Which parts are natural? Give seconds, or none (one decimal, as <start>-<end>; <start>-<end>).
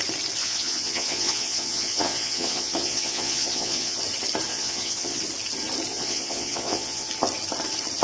0.0-0.4; 4.0-4.5; 5.2-5.9; 7.1-8.0